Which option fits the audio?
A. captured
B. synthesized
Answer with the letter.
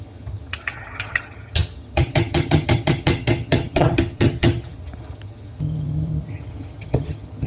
B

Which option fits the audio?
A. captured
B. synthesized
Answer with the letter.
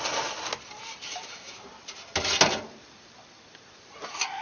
A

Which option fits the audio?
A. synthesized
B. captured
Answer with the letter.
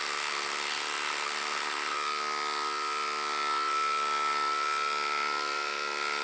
B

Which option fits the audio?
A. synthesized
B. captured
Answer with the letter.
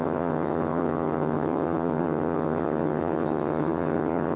A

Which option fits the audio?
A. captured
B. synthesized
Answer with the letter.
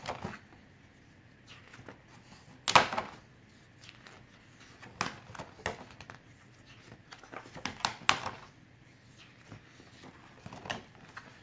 A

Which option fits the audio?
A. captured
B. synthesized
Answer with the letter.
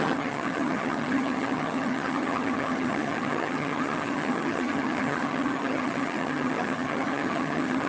B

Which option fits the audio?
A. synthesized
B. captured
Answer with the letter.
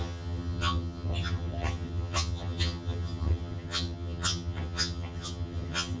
A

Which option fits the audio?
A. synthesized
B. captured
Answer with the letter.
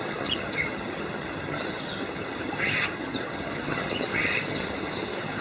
A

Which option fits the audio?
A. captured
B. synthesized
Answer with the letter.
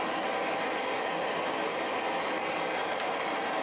A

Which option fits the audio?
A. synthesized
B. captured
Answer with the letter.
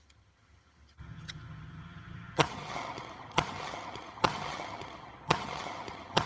A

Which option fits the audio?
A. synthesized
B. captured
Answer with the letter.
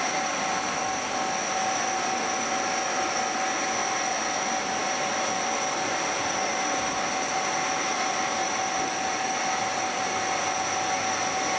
B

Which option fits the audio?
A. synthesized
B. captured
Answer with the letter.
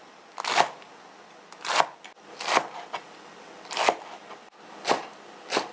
B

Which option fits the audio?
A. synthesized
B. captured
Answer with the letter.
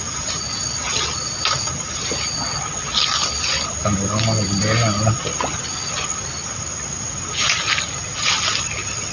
B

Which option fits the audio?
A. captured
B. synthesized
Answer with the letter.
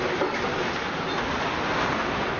A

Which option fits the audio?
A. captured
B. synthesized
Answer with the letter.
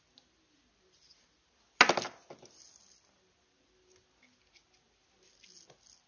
A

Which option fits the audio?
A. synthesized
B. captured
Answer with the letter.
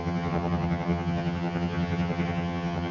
A